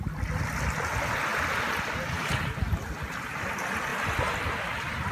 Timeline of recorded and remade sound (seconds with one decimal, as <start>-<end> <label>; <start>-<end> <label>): 0.0-1.3 recorded; 1.3-2.2 remade; 2.2-3.9 recorded; 3.9-5.1 remade